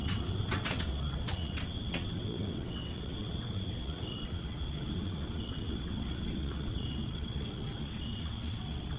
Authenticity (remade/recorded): remade